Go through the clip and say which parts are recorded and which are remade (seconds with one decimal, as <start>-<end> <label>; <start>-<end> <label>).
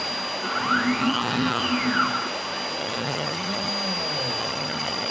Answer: 0.0-1.0 recorded; 1.0-1.6 remade; 1.6-2.8 recorded; 2.8-3.7 remade; 3.7-4.4 recorded; 4.4-5.1 remade